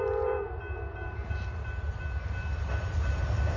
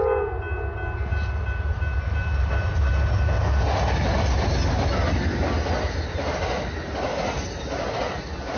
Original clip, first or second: second